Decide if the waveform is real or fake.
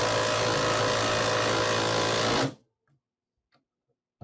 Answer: real